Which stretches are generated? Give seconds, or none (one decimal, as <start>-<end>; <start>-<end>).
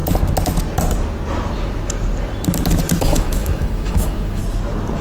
3.0-4.4